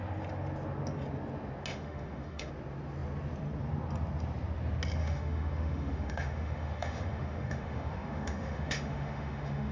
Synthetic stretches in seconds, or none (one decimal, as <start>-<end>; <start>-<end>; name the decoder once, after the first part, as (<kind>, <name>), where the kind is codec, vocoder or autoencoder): 1.7-2.5 (autoencoder, DAC-VAE); 5.0-9.7